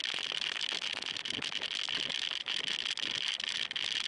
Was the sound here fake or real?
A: real